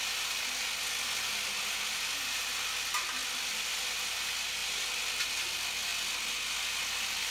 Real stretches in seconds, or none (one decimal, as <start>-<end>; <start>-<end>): 0.0-7.3